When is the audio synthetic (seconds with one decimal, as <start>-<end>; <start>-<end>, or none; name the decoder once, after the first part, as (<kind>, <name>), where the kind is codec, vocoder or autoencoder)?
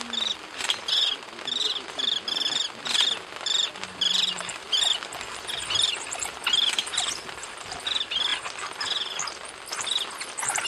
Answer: none